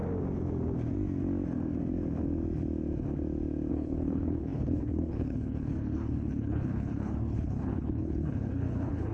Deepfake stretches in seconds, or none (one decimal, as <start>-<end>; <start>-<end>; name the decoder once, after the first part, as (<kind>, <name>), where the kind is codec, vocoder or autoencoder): 3.7-9.1 (codec, HILCodec)

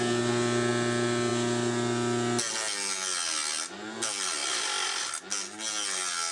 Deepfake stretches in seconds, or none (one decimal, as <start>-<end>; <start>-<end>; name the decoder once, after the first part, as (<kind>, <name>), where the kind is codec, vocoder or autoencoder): 4.4-5.0 (vocoder, BigVGAN v2)

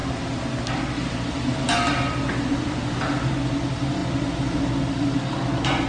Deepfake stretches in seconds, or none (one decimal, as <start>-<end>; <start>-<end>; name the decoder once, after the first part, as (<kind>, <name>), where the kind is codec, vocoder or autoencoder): none